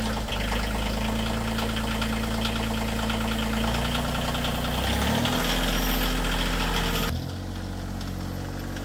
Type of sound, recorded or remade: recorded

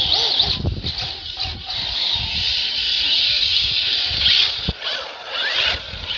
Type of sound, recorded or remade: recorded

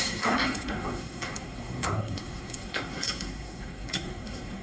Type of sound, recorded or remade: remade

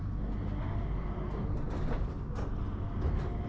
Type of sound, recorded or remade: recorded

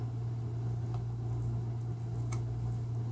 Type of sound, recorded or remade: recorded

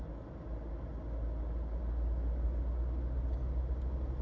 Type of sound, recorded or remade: recorded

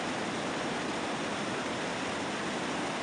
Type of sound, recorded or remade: recorded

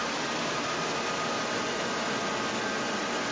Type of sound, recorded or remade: recorded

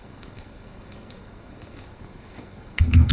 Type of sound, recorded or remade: remade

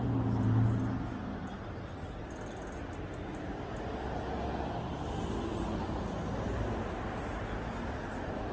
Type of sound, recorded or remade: recorded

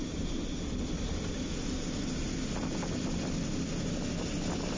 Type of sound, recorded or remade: recorded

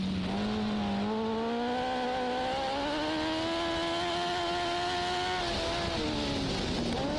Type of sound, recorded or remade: recorded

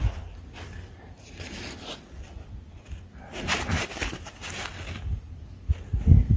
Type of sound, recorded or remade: recorded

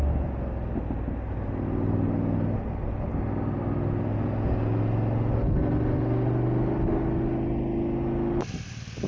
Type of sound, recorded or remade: recorded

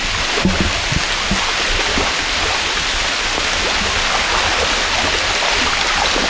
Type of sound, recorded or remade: recorded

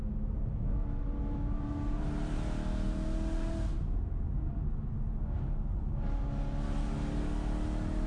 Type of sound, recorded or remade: recorded